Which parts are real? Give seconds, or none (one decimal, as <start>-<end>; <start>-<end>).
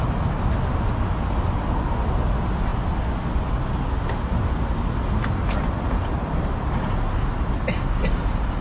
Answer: 0.0-8.6